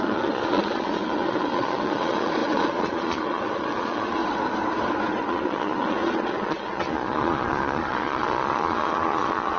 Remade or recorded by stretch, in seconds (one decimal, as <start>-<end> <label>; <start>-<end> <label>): 0.0-4.2 remade; 4.2-5.2 recorded; 5.2-9.6 remade